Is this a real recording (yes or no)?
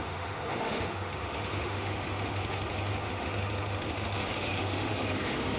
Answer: no